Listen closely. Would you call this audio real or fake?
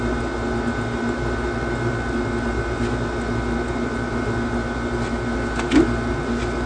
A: real